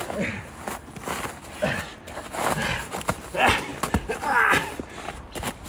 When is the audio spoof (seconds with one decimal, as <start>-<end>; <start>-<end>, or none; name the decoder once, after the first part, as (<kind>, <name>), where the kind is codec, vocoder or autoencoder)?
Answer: 3.7-5.7 (vocoder, BigVGAN v2)